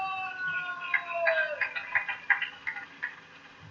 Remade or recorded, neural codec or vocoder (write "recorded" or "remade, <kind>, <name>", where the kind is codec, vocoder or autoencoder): recorded